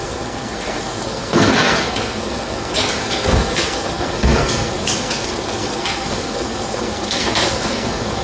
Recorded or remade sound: remade